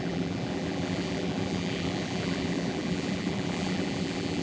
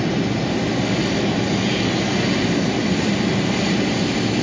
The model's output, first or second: first